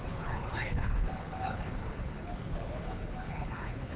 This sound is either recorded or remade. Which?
remade